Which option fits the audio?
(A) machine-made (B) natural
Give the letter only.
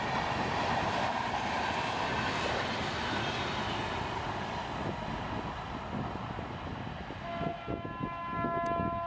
B